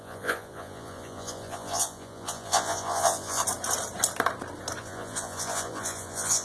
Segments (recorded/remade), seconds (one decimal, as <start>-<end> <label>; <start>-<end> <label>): 0.0-3.4 remade; 3.4-4.8 recorded; 4.8-6.4 remade